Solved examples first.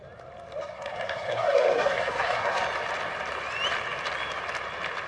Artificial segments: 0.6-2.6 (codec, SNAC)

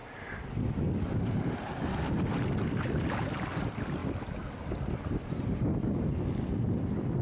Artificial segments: none

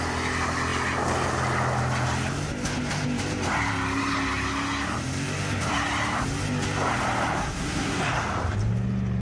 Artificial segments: 7.4-8.0 (codec, SNAC)

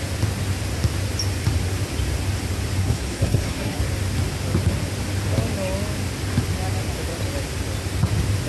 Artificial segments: 2.8-3.8 (codec, SNAC)

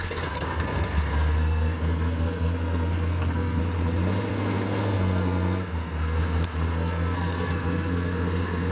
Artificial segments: 0.0-3.6 (codec, SNAC); 4.3-6.2; 6.7-8.7

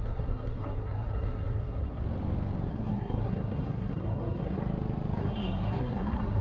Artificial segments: 0.0-2.0 (codec, SNAC); 2.7-4.6; 5.2-6.4

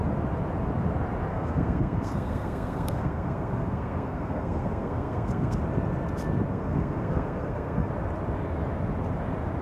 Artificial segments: 1.3-5.6 (codec, SNAC); 6.5-7.9